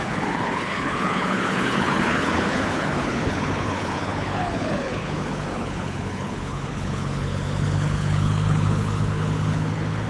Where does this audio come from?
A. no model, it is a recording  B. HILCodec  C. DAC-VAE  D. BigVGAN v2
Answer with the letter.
B